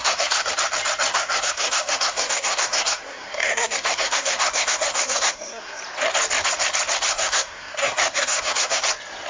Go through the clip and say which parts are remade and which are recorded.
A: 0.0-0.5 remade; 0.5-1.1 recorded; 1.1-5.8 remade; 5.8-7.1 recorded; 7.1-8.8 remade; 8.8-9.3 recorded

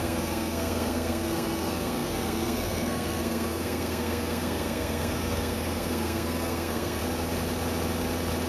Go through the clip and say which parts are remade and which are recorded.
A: 0.0-7.0 remade; 7.0-8.5 recorded

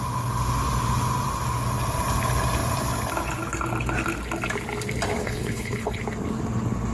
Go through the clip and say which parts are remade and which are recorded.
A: 0.0-5.2 recorded; 5.2-6.0 remade; 6.0-6.9 recorded